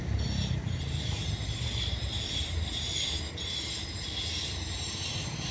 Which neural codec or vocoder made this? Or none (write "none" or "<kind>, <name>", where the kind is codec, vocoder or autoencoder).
vocoder, BigVGAN v2